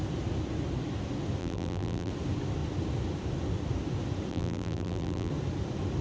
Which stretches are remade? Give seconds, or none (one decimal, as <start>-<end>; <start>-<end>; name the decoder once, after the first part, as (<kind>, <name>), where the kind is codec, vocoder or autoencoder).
1.4-2.1 (vocoder, BigVGAN v2); 4.3-5.3